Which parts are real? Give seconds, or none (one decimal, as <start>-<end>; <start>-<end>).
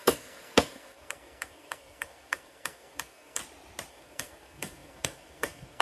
3.4-3.9